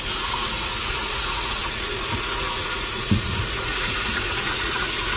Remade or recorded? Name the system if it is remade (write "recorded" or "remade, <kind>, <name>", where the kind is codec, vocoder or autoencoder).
remade, vocoder, Vocos